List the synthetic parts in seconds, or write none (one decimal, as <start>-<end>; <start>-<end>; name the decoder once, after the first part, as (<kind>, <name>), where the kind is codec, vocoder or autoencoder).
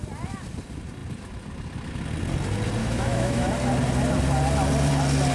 2.8-3.5 (autoencoder, DAC-VAE)